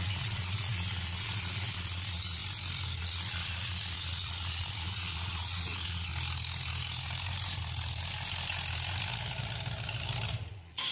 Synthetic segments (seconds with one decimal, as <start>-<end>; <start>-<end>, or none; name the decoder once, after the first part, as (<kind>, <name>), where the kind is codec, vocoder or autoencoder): 0.0-2.4 (vocoder, Vocos); 3.0-6.1; 10.5-10.9